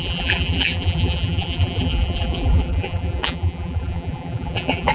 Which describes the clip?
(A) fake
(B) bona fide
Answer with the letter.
A